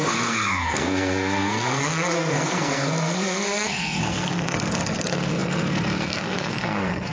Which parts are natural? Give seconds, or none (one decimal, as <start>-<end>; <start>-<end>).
none